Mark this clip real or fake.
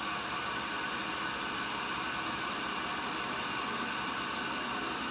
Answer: real